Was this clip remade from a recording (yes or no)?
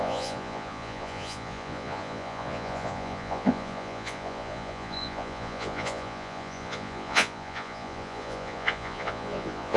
yes